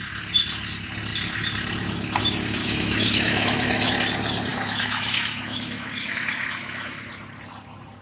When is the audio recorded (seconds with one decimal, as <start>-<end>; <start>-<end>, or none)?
0.0-2.6; 3.9-4.5; 7.1-8.0